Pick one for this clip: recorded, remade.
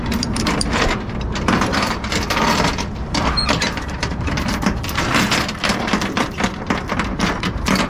remade